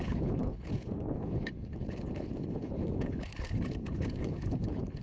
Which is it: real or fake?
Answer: fake